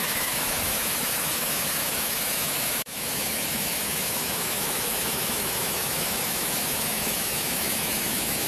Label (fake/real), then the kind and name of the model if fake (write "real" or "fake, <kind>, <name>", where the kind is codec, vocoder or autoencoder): fake, autoencoder, DAC-VAE